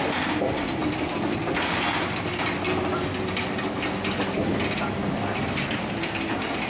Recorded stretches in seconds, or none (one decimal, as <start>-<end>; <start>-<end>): 0.0-0.8; 1.7-6.7